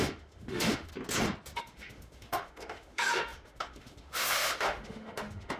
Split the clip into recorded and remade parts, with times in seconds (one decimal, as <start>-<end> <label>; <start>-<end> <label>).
0.0-0.9 remade; 0.9-1.6 recorded; 1.6-5.6 remade